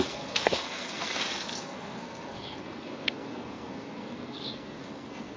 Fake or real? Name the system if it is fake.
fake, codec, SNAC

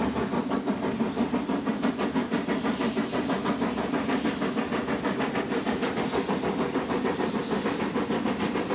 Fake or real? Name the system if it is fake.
real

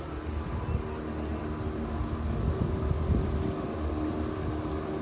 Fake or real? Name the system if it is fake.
real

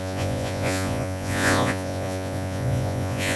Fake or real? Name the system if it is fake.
fake, vocoder, Vocos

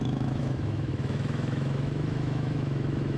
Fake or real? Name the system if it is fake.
fake, autoencoder, DAC-VAE